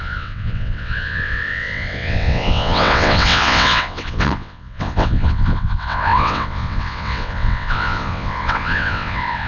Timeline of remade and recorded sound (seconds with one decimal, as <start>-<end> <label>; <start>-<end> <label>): 0.0-9.5 remade